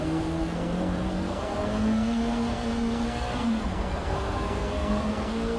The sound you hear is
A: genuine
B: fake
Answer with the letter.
B